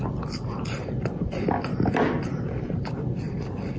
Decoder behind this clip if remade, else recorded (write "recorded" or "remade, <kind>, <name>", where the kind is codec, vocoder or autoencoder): recorded